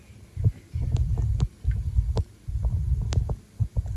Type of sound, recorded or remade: recorded